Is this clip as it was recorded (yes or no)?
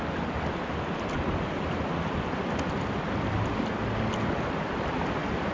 yes